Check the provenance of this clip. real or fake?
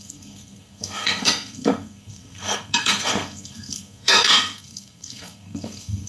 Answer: fake